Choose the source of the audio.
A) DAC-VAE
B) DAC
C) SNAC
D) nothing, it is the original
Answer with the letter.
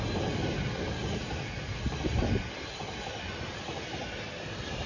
D